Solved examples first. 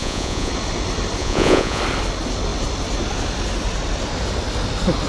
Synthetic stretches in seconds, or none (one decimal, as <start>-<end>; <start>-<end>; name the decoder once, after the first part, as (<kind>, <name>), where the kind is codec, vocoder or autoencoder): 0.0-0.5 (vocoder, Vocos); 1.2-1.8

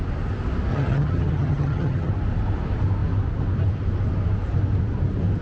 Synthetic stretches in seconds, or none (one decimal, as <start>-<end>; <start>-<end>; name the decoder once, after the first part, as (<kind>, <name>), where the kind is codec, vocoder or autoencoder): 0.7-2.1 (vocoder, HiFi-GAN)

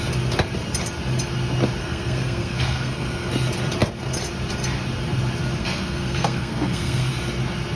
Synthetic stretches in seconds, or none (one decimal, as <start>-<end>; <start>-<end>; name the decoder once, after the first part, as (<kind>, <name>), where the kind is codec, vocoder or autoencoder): 1.8-3.3 (codec, SNAC); 5.6-7.1

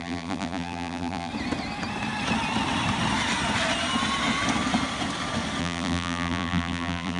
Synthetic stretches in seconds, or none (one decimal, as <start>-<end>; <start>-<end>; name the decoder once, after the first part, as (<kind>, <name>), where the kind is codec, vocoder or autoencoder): 0.0-1.3 (vocoder, BigVGAN v2); 5.6-7.2

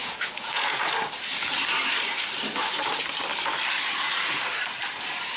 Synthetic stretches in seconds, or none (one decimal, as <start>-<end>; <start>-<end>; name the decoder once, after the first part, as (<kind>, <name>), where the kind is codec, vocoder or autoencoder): 0.0-0.8 (vocoder, Vocos)

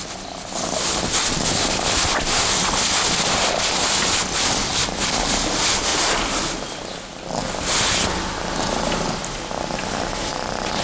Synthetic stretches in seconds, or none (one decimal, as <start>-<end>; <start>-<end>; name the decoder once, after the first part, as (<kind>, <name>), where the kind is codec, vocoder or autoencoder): 5.9-6.6 (vocoder, BigVGAN v2)

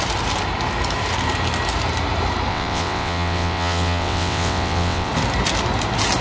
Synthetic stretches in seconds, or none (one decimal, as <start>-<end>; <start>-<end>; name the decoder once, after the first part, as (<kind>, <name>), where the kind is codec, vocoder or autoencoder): 2.5-5.1 (vocoder, WaveNeXt)

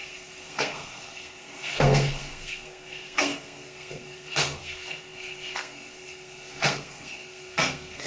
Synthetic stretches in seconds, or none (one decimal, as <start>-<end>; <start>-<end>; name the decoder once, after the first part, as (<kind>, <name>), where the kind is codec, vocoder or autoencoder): 0.0-8.1 (codec, SNAC)